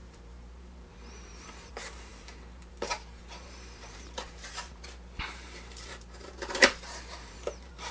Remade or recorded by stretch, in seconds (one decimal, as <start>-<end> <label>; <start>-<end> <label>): 0.0-7.9 remade